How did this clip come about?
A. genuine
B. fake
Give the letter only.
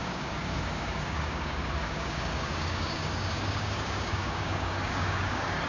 B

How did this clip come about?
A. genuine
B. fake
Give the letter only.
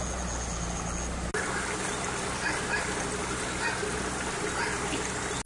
A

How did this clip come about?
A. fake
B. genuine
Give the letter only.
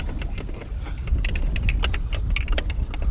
B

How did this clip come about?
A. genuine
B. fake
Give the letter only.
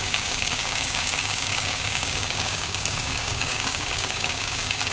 B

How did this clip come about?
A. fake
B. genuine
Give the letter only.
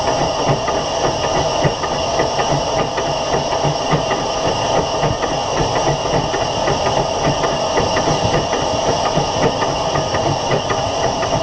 B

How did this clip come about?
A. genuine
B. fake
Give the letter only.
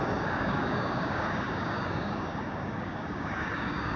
B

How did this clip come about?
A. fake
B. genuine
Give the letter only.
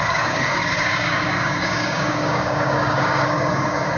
A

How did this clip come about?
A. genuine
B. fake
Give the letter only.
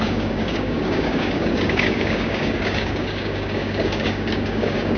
B